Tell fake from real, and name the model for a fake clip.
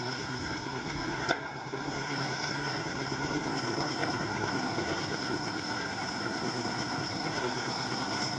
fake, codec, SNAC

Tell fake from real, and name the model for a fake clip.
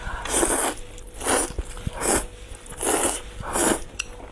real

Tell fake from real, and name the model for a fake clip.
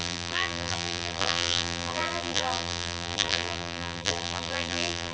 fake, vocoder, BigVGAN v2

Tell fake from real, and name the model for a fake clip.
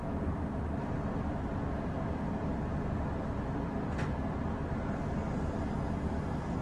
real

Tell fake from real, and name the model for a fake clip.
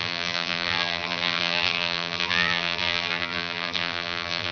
fake, vocoder, BigVGAN v2